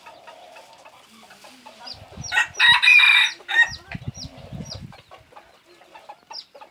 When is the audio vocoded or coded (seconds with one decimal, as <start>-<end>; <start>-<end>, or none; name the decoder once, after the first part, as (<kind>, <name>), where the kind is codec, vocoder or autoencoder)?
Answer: none

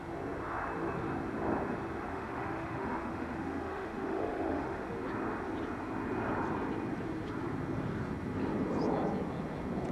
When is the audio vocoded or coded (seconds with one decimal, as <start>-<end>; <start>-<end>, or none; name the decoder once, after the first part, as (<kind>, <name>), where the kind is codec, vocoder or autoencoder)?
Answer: 2.1-4.9 (autoencoder, DAC-VAE)

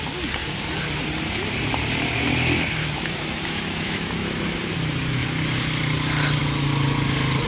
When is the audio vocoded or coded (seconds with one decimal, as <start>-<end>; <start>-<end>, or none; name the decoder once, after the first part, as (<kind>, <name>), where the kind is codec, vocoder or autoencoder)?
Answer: 2.8-4.4 (autoencoder, DAC-VAE)

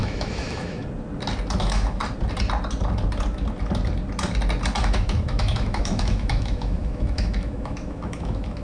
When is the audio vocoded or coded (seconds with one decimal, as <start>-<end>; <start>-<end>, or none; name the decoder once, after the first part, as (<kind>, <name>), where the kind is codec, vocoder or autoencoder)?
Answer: 0.0-0.8 (autoencoder, DAC-VAE); 1.6-2.0; 4.8-8.6

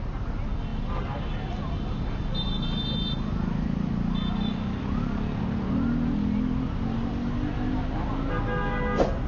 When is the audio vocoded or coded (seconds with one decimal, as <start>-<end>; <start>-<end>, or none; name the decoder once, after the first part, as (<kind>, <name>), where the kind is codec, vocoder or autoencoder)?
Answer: none

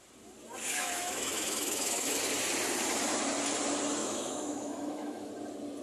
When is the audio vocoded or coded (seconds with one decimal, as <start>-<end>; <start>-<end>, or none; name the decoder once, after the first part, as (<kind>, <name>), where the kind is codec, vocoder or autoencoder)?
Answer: 0.6-2.2 (autoencoder, DAC-VAE); 4.0-5.3

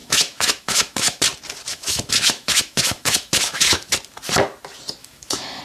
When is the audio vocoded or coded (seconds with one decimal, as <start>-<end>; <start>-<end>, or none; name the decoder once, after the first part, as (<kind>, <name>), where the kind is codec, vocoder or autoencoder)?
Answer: 0.0-1.2 (autoencoder, DAC-VAE); 1.7-3.9; 5.0-5.6